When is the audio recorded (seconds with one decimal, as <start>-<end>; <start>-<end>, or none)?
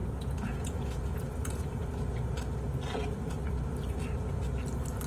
1.9-5.1